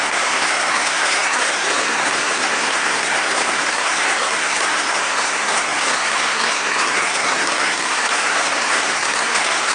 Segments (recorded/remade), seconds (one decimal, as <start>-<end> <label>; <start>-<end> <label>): 0.0-9.7 remade